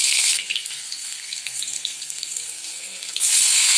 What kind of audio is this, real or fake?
fake